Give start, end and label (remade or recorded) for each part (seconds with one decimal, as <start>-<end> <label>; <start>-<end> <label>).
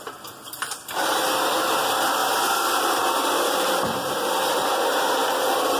0.0-5.8 recorded